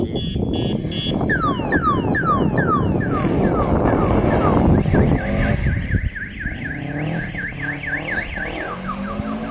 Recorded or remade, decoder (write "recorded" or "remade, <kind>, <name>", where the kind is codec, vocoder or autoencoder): recorded